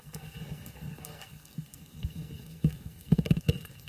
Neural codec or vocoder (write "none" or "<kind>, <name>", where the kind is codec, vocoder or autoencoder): codec, SNAC